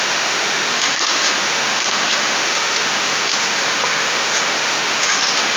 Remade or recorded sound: remade